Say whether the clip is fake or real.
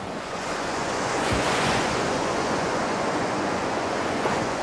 fake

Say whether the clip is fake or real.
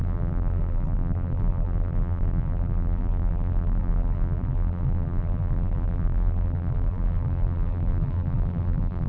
fake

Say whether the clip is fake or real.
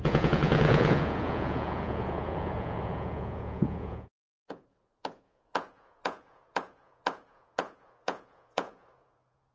fake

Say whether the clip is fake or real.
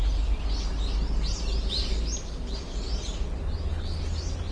real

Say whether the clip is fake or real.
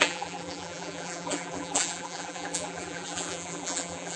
fake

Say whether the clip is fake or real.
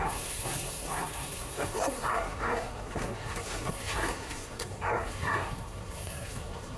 fake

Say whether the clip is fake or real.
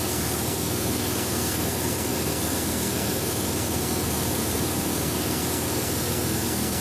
fake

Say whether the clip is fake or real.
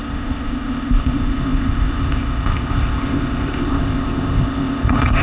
fake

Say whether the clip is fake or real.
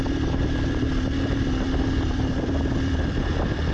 fake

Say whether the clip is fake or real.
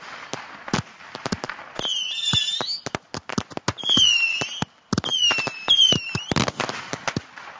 real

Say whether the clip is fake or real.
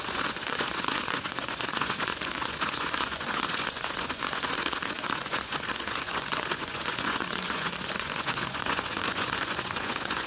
fake